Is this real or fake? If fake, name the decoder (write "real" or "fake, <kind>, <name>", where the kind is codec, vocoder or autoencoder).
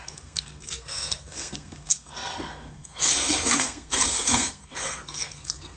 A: fake, codec, SNAC